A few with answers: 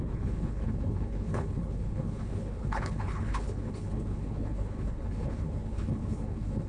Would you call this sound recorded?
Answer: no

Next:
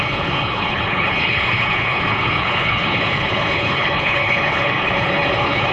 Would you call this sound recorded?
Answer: no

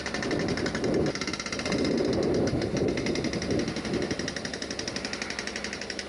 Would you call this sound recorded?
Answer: yes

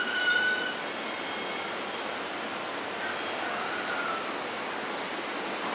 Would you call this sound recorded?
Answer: yes